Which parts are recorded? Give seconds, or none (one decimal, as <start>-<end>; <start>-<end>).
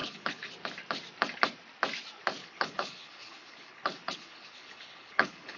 0.5-2.4